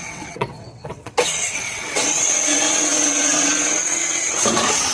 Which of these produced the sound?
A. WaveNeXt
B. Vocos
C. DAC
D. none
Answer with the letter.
A